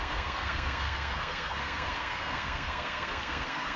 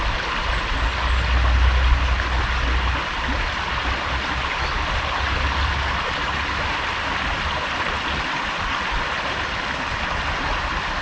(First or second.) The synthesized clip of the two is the first